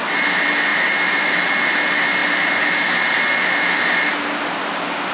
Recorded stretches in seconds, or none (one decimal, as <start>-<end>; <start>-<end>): 0.0-5.1